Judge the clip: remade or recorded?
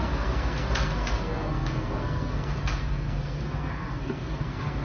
remade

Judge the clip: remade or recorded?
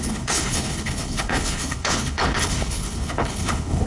remade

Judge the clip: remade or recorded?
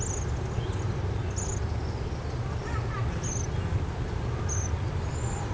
recorded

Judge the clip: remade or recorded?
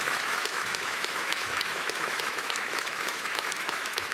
remade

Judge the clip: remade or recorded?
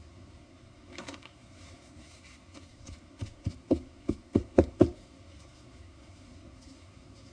remade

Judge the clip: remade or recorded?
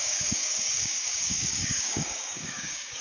remade